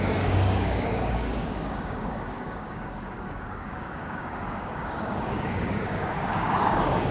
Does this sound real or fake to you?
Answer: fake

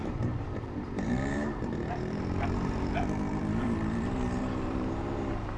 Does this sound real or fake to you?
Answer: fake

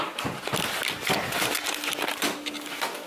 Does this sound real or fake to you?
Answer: real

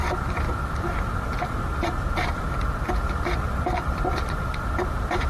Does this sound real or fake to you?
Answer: fake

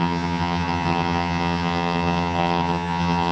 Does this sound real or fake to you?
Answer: fake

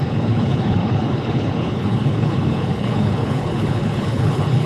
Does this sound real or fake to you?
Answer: fake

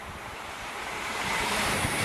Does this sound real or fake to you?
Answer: fake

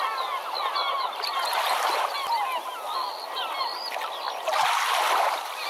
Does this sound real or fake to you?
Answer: real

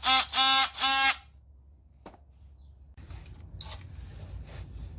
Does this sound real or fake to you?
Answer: real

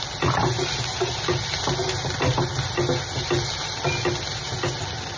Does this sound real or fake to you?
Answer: real